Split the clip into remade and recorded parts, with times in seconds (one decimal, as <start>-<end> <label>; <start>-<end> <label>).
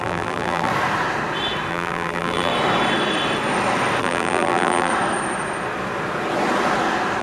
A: 0.0-0.7 remade; 0.7-1.7 recorded; 1.7-2.5 remade; 2.5-4.0 recorded; 4.0-4.9 remade; 4.9-7.2 recorded